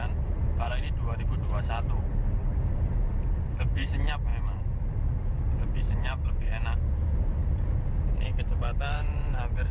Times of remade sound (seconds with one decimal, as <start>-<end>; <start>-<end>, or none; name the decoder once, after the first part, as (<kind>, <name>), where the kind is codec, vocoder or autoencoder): 0.0-9.7 (vocoder, BigVGAN v2)